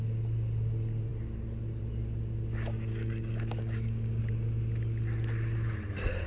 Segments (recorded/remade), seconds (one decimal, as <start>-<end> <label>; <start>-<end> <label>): 0.0-2.9 recorded; 2.9-4.2 remade; 4.2-6.3 recorded